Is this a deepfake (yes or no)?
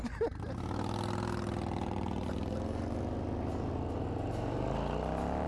no